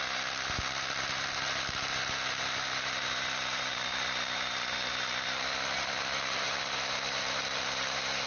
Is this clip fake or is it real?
fake